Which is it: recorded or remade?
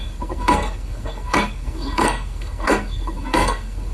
remade